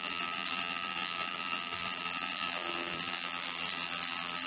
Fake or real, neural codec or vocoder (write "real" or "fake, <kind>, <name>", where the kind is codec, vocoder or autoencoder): fake, vocoder, BigVGAN v2